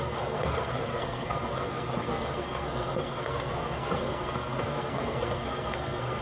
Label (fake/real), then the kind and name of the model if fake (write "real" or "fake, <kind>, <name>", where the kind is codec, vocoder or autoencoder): fake, codec, SNAC